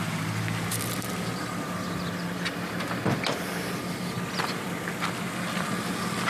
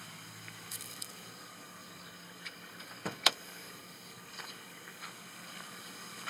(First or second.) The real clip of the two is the first